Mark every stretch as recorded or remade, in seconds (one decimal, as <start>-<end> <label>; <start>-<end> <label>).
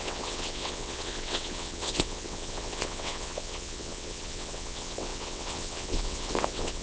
0.0-6.8 remade